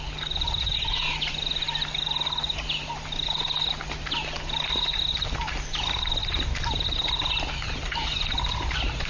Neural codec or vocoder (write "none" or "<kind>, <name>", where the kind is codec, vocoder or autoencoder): none